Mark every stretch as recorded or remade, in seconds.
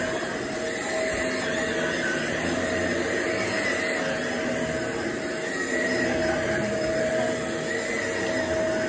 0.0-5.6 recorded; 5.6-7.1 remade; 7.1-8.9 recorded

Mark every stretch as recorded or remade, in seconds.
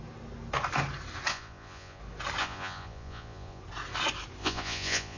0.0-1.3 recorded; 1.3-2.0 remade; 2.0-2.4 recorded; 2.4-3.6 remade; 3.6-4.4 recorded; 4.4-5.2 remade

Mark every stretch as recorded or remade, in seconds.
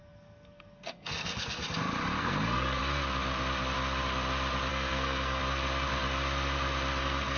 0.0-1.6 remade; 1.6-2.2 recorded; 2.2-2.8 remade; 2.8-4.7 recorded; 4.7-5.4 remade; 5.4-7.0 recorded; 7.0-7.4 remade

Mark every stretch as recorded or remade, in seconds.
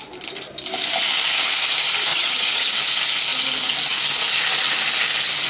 0.0-2.1 recorded; 2.1-2.7 remade; 2.7-5.5 recorded